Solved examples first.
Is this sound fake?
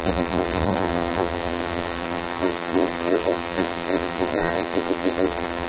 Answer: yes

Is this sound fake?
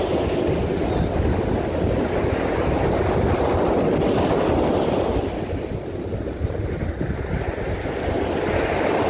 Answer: no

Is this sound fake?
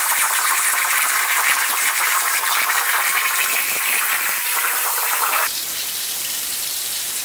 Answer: yes